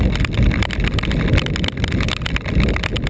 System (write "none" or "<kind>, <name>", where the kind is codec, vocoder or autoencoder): none